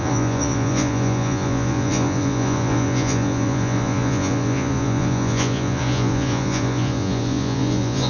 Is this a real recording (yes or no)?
no